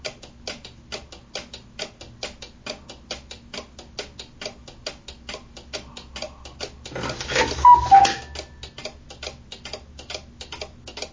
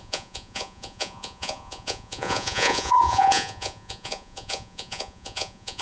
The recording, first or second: first